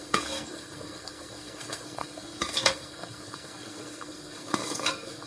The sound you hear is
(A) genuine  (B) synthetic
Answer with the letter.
B